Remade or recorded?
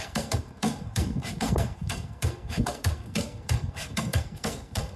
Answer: remade